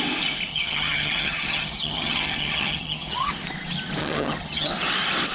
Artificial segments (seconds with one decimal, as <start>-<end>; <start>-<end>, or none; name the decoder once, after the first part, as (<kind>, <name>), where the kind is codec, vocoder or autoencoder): 0.5-3.3 (vocoder, HiFi-GAN); 4.0-4.7

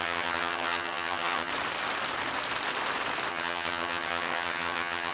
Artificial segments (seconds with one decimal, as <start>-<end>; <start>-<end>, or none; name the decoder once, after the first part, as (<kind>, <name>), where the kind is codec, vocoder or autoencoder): 0.0-1.5 (vocoder, HiFi-GAN); 3.3-5.1

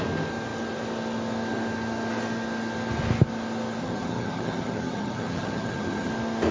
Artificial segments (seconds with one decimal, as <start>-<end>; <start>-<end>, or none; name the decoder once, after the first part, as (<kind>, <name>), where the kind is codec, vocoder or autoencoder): 3.8-6.1 (vocoder, HiFi-GAN)

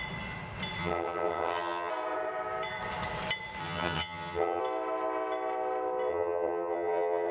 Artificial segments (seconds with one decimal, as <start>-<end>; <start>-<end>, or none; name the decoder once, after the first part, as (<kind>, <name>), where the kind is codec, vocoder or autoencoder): 0.8-1.9 (vocoder, HiFi-GAN); 3.6-4.6; 6.1-7.3

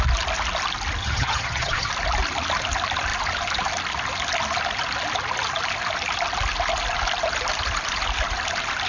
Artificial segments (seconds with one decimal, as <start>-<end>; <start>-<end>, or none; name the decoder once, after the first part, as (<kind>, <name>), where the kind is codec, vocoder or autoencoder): 1.0-1.9 (vocoder, HiFi-GAN)